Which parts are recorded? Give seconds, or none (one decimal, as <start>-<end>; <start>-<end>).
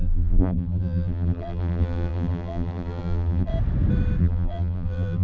3.5-4.2